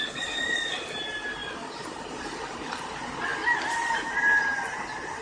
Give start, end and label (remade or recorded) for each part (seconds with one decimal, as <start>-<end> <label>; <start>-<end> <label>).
0.0-1.4 recorded; 1.4-2.8 remade; 2.8-5.2 recorded